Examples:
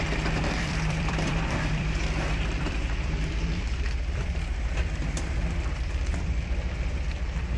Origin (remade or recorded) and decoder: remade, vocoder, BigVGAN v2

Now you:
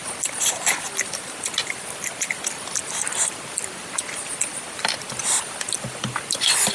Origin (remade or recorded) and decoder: recorded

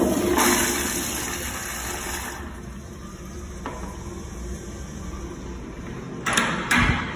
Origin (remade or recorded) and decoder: recorded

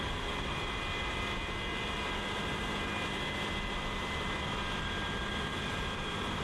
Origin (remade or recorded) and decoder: recorded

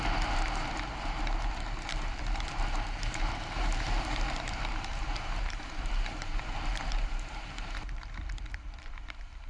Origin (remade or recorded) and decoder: remade, vocoder, BigVGAN v2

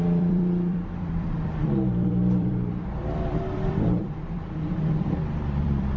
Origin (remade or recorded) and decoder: remade, vocoder, BigVGAN v2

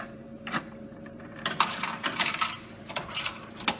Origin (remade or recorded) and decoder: remade, vocoder, BigVGAN v2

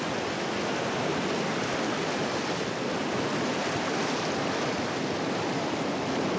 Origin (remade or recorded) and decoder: recorded